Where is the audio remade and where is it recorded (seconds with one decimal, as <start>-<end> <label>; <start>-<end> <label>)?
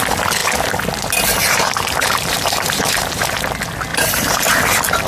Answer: 0.0-1.4 recorded; 1.4-3.1 remade; 3.1-3.9 recorded; 3.9-4.5 remade; 4.5-5.1 recorded